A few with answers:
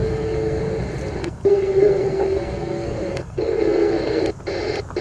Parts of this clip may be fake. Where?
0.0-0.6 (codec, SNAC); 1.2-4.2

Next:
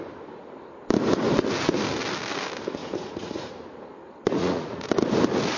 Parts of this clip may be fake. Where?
2.8-3.5 (vocoder, Vocos); 4.4-4.9

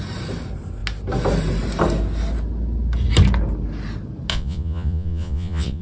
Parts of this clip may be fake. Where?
4.3-5.8 (vocoder, Vocos)